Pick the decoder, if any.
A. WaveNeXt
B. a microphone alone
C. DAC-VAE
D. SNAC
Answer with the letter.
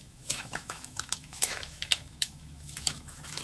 C